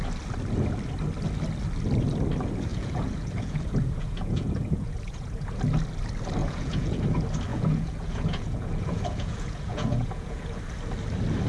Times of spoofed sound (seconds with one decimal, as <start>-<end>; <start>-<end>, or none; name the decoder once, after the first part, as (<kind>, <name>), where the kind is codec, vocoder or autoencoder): 2.7-5.6 (vocoder, Vocos); 6.4-7.0; 7.5-10.6